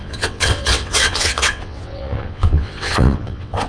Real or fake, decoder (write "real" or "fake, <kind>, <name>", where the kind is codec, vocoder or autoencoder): fake, vocoder, WaveNeXt